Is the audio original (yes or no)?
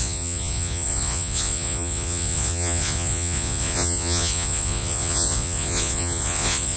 no